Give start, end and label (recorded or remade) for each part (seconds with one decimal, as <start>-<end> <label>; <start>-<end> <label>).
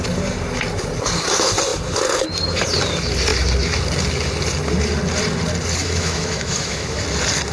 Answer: 0.0-5.8 recorded; 5.8-7.0 remade; 7.0-7.5 recorded